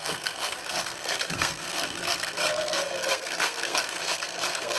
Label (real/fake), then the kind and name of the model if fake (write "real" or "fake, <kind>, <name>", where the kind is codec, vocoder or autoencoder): fake, codec, SNAC